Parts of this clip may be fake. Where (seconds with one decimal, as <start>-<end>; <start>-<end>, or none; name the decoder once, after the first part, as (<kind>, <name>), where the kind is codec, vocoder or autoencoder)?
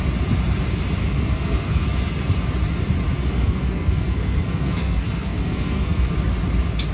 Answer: 1.0-1.8 (codec, SNAC); 3.2-6.1